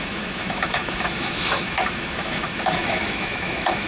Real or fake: fake